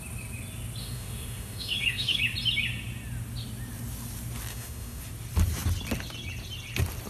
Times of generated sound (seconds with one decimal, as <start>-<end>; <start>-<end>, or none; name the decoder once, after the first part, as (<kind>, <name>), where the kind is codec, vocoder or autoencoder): 0.8-2.2 (autoencoder, DAC-VAE); 4.5-5.0